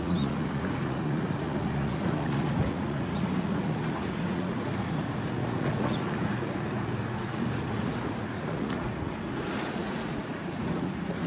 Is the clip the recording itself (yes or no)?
no